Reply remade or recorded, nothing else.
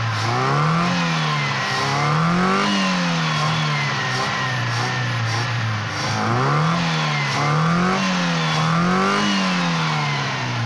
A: recorded